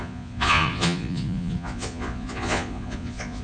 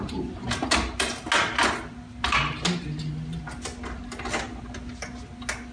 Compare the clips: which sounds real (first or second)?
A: second